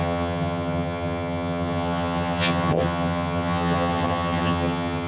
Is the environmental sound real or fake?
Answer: fake